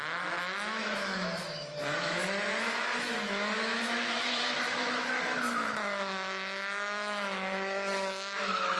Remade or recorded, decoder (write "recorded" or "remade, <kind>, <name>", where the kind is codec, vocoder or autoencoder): remade, autoencoder, DAC-VAE